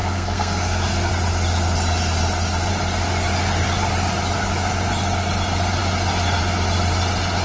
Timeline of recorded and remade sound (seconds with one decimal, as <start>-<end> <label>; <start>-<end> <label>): 0.0-1.1 remade; 1.1-7.4 recorded

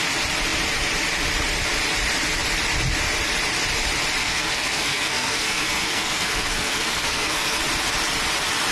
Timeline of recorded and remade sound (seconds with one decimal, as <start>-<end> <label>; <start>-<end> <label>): 0.0-4.2 recorded; 4.2-7.6 remade; 7.6-8.7 recorded

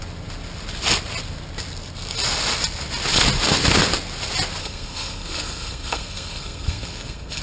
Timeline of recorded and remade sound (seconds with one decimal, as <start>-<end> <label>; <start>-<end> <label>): 0.0-4.6 recorded; 4.6-7.4 remade

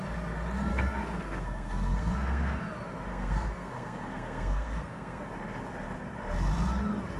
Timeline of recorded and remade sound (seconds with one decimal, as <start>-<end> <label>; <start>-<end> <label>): 0.0-0.7 recorded; 0.7-2.6 remade; 2.6-3.1 recorded; 3.1-5.3 remade; 5.3-7.2 recorded

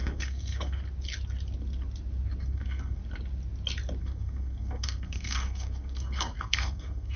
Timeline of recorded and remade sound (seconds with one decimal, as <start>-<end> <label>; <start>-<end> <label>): 0.0-0.8 remade; 0.8-2.4 recorded; 2.4-3.0 remade; 3.0-4.0 recorded; 4.0-7.2 remade